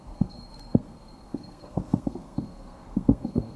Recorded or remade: remade